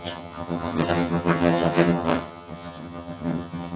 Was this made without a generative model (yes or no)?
no